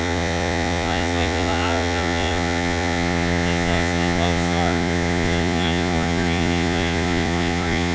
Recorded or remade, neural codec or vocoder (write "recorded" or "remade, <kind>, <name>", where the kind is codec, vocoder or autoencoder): remade, vocoder, Vocos